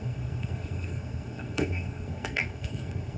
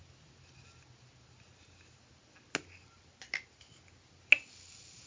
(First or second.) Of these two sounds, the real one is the second